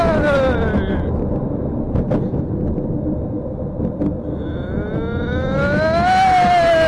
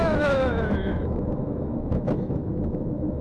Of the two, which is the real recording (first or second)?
first